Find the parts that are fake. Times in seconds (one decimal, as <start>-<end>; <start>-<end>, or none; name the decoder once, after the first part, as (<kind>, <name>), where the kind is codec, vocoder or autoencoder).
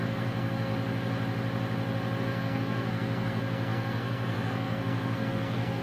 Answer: 0.0-0.7 (codec, SNAC); 2.2-5.8